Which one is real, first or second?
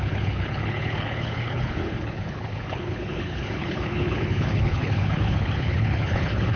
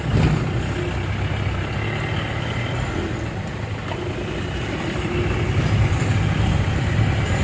second